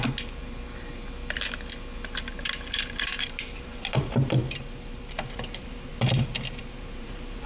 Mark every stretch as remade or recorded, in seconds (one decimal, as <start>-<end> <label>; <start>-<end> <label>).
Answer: 0.0-0.4 remade; 0.4-3.0 recorded; 3.0-4.4 remade; 4.4-5.2 recorded; 5.2-5.9 remade; 5.9-6.6 recorded; 6.6-7.5 remade

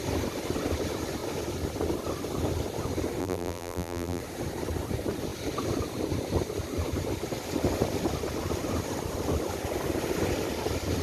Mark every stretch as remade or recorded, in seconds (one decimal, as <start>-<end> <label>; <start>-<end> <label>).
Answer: 0.0-3.2 recorded; 3.2-4.2 remade; 4.2-11.0 recorded

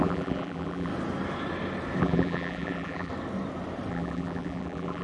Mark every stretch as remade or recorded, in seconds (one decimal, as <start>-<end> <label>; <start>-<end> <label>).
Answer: 0.0-0.9 remade; 0.9-2.0 recorded; 2.0-3.1 remade; 3.1-3.9 recorded; 3.9-5.0 remade

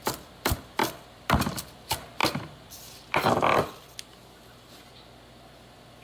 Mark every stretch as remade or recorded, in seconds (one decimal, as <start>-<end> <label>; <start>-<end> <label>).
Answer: 0.0-0.8 recorded; 0.8-1.6 remade; 1.6-2.2 recorded; 2.2-4.2 remade; 4.2-6.0 recorded

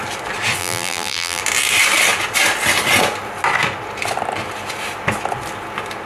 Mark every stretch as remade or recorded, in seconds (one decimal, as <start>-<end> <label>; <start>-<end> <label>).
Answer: 0.0-0.6 recorded; 0.6-1.4 remade; 1.4-6.1 recorded

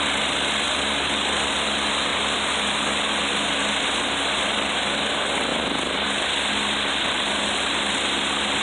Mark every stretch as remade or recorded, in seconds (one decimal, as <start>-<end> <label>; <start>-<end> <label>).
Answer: 0.0-8.6 recorded